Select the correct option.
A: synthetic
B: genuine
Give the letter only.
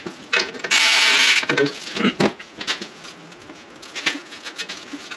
B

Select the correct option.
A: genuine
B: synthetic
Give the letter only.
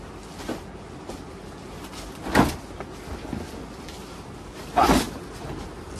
A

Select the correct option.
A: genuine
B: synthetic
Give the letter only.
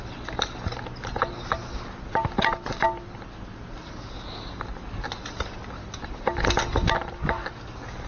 A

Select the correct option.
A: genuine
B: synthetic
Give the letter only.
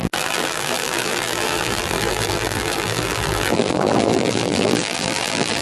B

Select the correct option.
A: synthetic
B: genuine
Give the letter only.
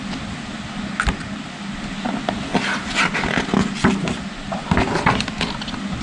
B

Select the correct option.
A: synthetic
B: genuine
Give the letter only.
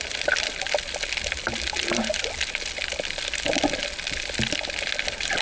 B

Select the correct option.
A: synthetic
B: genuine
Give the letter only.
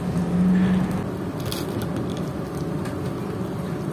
B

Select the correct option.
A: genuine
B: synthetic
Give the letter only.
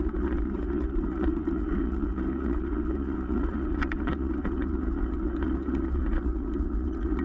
B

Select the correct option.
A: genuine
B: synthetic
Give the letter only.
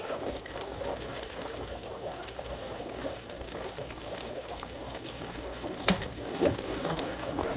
B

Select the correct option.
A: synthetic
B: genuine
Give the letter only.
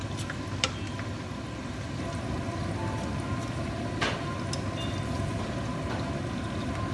B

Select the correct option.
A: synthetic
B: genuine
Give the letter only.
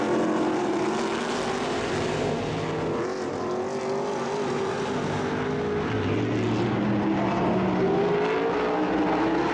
B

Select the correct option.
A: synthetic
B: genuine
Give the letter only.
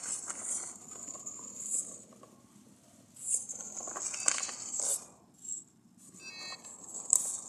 B